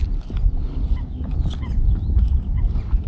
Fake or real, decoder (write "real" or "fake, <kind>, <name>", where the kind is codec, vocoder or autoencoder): real